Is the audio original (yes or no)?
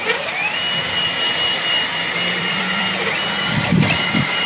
no